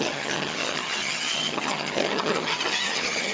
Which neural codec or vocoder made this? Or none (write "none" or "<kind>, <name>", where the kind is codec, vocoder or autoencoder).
vocoder, HiFi-GAN